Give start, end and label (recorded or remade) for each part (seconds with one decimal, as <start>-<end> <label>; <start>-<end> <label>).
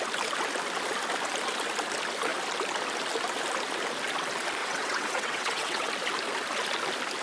0.0-4.6 recorded; 4.6-5.9 remade; 5.9-7.2 recorded